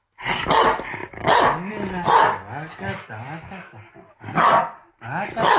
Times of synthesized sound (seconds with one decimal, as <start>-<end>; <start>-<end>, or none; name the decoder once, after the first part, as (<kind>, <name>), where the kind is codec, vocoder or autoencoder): none